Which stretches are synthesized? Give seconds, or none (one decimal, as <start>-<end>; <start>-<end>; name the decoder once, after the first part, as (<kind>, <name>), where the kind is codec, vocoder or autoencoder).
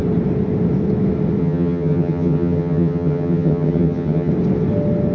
1.4-4.3 (vocoder, HiFi-GAN)